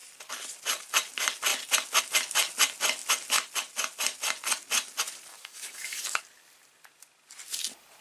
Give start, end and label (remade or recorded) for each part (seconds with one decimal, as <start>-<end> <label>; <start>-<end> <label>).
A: 0.0-5.3 recorded; 5.3-6.2 remade; 6.2-8.0 recorded